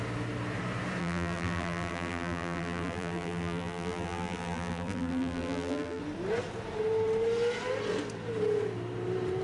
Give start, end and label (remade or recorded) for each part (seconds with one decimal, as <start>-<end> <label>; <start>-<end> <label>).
0.0-1.0 recorded; 1.0-6.0 remade; 6.0-9.4 recorded